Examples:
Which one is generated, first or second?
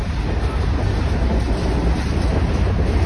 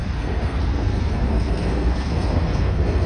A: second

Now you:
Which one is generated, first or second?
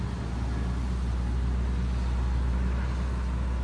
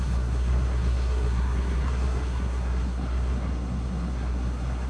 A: second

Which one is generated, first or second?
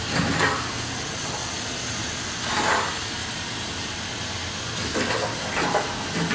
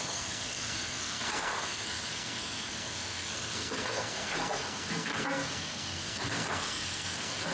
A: second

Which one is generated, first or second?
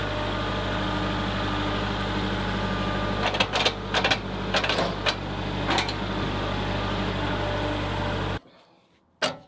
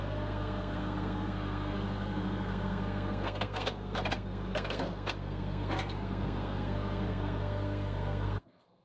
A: second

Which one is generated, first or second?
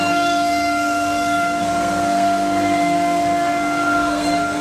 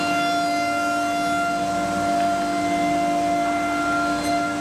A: first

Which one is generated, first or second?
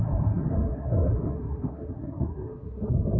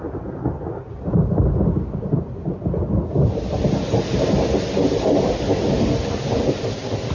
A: first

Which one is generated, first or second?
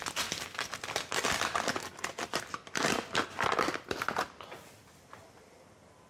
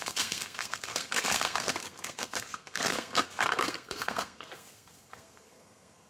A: second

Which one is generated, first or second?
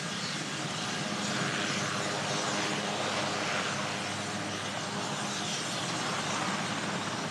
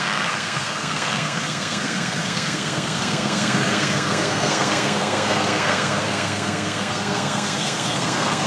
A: second